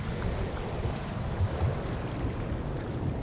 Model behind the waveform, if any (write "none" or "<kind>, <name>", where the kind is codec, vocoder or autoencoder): none